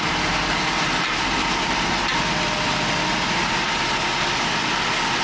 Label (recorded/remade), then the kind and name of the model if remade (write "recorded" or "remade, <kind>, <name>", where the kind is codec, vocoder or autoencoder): recorded